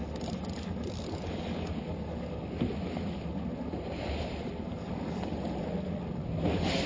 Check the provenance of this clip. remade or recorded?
recorded